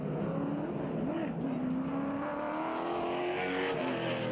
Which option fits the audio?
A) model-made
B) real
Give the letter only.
B